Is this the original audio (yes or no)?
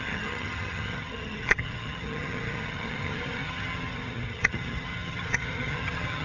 no